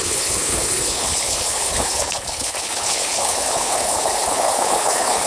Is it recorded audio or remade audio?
remade